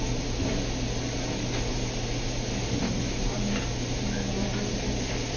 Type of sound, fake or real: real